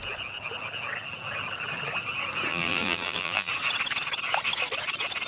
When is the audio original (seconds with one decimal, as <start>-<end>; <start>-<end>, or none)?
0.0-2.5; 3.5-5.3